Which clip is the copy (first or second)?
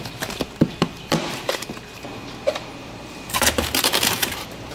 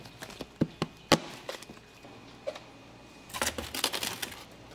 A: first